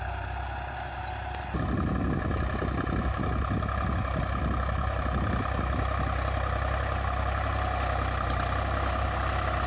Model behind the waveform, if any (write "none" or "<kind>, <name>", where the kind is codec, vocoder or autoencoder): none